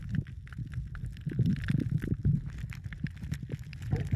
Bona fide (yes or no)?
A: yes